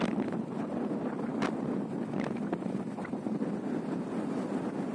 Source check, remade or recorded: recorded